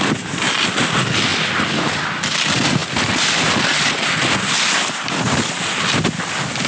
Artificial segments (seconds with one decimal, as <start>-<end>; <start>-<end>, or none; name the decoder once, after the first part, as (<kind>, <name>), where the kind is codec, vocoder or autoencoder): none